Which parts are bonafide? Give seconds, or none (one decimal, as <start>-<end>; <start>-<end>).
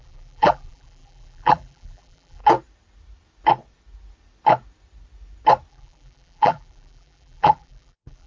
2.4-5.7